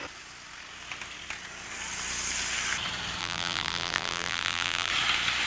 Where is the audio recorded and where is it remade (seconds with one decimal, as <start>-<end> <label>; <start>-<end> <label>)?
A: 0.0-3.2 recorded; 3.2-4.9 remade; 4.9-5.5 recorded